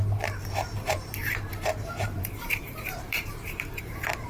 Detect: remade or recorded remade